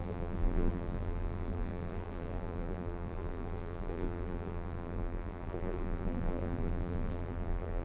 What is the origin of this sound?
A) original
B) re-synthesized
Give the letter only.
B